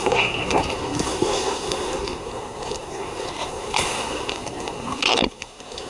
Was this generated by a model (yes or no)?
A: yes